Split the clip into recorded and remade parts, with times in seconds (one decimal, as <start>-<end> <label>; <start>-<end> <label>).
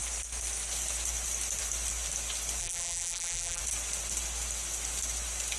0.0-2.6 recorded; 2.6-3.6 remade; 3.6-5.6 recorded